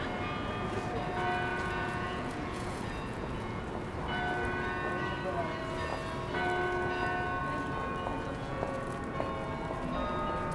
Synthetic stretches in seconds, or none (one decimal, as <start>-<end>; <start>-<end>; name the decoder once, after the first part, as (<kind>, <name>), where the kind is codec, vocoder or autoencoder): 1.5-3.6 (vocoder, Vocos); 8.1-9.0